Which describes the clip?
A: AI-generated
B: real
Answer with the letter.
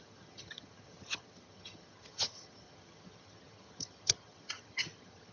A